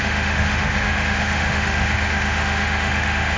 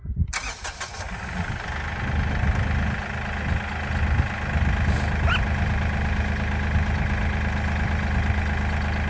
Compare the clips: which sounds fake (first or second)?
first